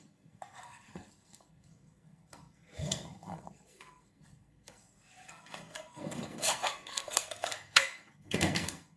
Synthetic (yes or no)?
yes